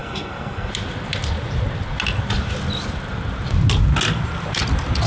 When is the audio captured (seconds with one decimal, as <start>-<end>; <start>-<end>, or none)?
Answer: 0.7-5.1